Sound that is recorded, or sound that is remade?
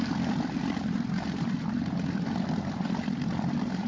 recorded